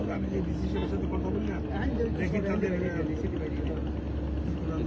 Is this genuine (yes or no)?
yes